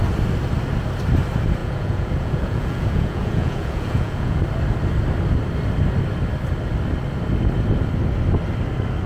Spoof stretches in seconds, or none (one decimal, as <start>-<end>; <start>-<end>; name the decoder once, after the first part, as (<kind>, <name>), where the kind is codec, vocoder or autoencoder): 1.6-4.4 (vocoder, Vocos)